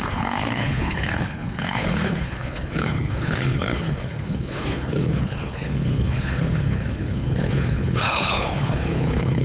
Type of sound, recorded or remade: remade